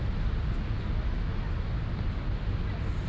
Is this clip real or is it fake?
real